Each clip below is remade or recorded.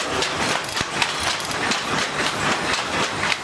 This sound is recorded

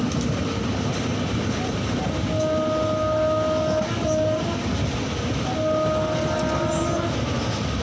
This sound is recorded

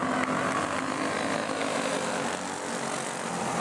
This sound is recorded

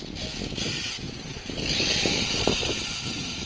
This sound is recorded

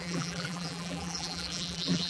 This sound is remade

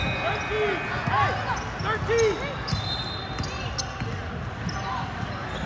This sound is recorded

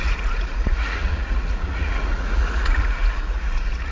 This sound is remade